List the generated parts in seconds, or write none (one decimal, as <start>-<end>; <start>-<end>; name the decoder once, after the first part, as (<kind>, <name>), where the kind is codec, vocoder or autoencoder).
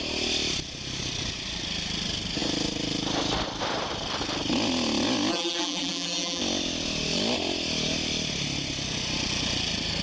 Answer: 5.3-6.4 (vocoder, BigVGAN v2)